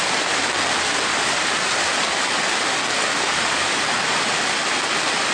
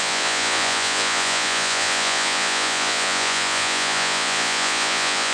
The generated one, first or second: second